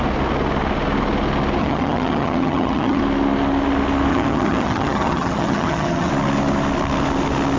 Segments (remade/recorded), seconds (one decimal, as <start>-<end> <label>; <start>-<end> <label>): 0.0-1.6 recorded; 1.6-3.0 remade; 3.0-4.1 recorded; 4.1-6.1 remade; 6.1-7.6 recorded